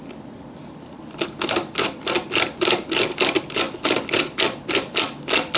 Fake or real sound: real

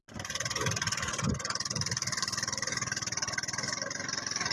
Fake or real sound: real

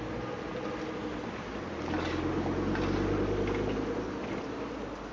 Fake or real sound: real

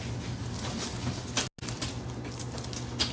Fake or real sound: real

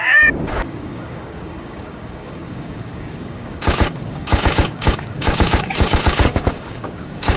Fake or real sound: fake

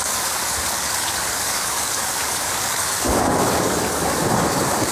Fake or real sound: fake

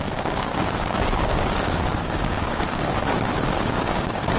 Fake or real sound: fake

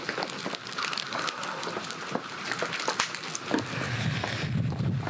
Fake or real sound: real